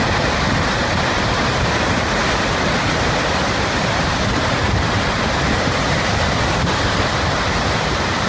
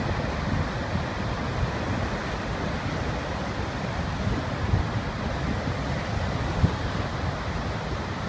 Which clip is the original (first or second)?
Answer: second